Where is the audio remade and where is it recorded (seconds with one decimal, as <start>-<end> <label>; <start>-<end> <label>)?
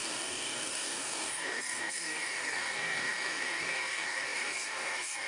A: 0.0-5.3 remade